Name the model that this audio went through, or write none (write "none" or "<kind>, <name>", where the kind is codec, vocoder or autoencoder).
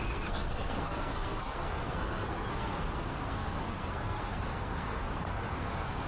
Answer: codec, SNAC